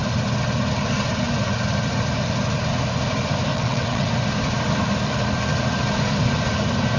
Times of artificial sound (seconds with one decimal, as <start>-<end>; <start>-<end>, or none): 3.5-4.1